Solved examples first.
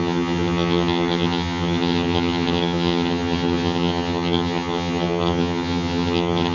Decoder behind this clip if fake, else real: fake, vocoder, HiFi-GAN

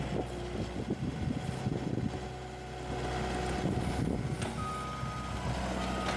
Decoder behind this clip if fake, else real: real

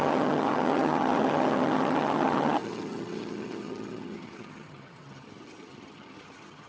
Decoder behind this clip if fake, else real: fake, vocoder, HiFi-GAN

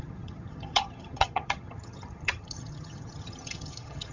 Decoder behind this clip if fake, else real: fake, vocoder, HiFi-GAN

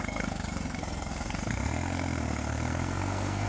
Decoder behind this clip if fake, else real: fake, codec, SNAC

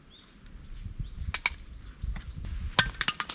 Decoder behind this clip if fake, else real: real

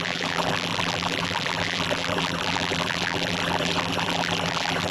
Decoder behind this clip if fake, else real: fake, vocoder, BigVGAN v2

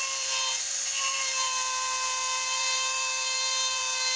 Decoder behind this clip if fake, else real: fake, vocoder, BigVGAN v2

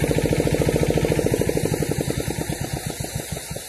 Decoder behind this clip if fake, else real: real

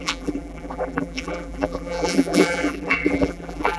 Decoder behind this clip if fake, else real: fake, vocoder, BigVGAN v2